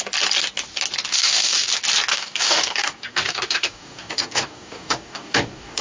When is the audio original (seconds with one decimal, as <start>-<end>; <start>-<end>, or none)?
0.0-1.1; 1.7-2.1